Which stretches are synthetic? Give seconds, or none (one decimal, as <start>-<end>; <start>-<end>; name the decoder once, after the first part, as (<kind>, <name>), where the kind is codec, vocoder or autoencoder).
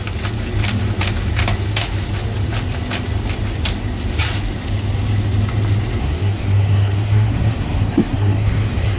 6.0-9.0 (codec, SNAC)